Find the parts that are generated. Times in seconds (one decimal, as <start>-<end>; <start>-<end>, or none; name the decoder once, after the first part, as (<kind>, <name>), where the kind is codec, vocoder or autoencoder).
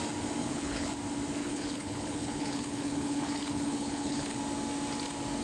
0.4-0.9 (codec, HILCodec); 1.4-4.4